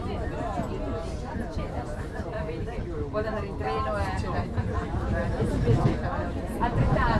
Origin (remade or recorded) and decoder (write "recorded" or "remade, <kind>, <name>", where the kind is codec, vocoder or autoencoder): recorded